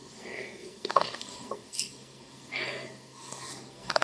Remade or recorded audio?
remade